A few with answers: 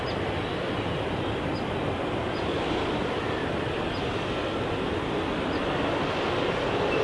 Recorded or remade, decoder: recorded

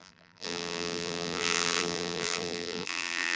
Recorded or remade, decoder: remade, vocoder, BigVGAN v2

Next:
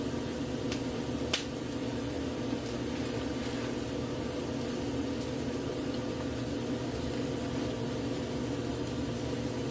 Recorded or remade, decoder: recorded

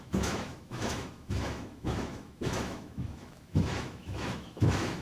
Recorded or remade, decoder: remade, autoencoder, DAC-VAE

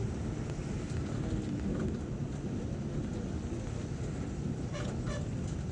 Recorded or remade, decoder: recorded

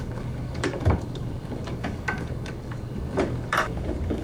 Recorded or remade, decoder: remade, codec, DAC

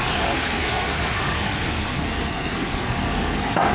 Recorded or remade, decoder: remade, codec, SNAC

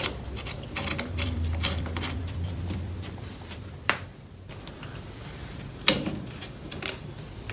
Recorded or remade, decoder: remade, vocoder, BigVGAN v2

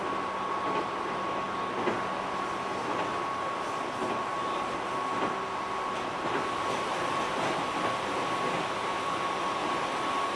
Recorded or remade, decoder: recorded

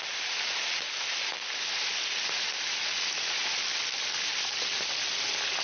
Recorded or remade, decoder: recorded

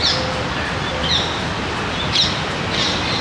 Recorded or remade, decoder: recorded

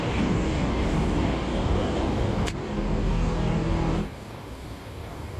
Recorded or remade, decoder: remade, codec, DAC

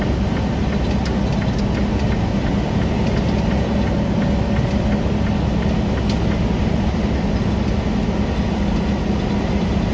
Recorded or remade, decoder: recorded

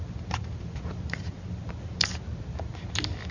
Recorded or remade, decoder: recorded